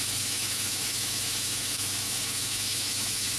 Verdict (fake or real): fake